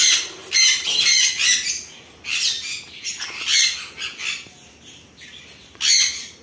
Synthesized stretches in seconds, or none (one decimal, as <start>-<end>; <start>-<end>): none